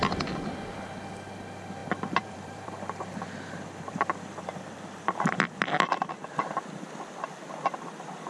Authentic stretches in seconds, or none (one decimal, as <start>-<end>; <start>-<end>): 0.0-1.8; 6.1-8.3